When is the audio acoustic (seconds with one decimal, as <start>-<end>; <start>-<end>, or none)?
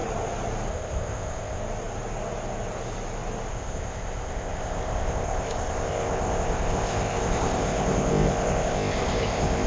0.0-0.7; 1.6-3.5